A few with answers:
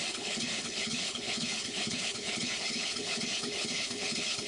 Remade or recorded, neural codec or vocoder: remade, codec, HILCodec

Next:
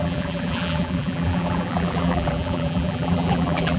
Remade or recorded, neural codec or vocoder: remade, vocoder, BigVGAN v2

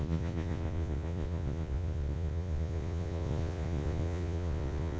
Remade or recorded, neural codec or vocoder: remade, vocoder, Vocos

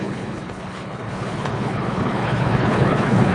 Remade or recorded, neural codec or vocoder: remade, codec, HILCodec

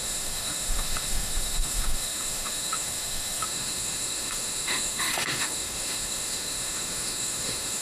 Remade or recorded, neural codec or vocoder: remade, autoencoder, DAC-VAE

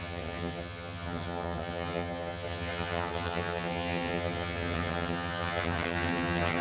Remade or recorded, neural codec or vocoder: remade, vocoder, HiFi-GAN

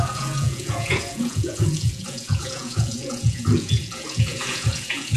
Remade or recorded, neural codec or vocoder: remade, vocoder, Vocos